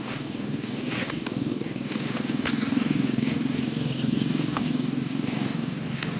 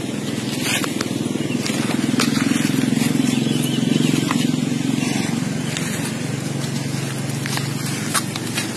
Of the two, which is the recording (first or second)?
second